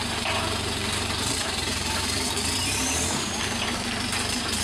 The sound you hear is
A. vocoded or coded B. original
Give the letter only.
A